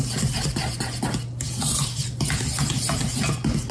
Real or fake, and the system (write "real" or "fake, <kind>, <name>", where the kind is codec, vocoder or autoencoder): real